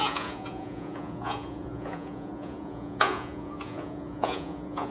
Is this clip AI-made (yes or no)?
yes